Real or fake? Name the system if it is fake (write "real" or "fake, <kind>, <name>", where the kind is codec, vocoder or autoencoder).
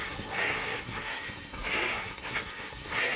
fake, codec, SNAC